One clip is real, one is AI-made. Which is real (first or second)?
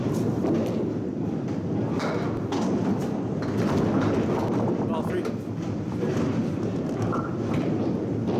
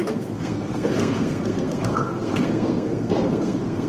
first